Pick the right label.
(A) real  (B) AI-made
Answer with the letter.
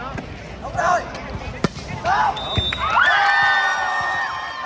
A